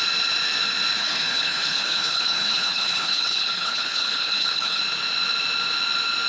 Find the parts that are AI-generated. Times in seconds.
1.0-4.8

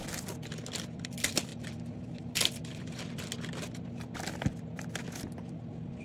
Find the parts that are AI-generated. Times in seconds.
none

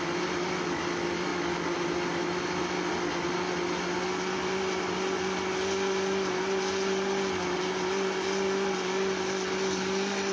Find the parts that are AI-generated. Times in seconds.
none